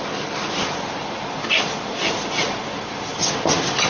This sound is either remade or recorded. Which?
recorded